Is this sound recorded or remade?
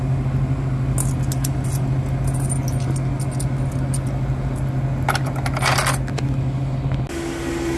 recorded